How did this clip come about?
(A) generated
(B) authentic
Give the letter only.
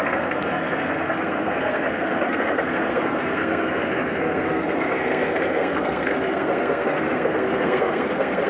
A